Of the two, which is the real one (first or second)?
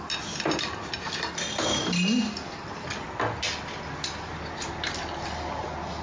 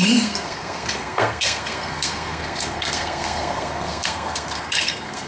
first